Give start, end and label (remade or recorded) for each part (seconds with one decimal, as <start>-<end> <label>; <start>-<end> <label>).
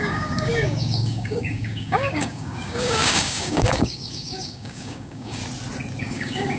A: 0.0-5.4 remade; 5.4-6.0 recorded; 6.0-6.6 remade